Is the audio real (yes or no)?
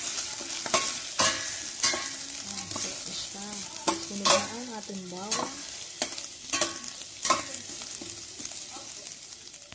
yes